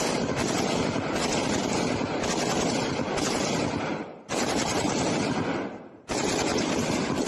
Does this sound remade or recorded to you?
recorded